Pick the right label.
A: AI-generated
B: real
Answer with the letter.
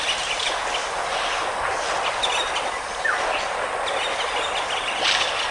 B